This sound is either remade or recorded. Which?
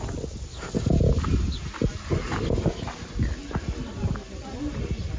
recorded